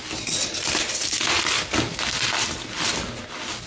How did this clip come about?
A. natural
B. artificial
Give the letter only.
A